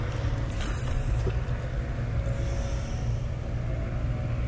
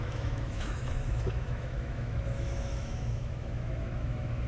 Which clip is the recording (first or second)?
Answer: first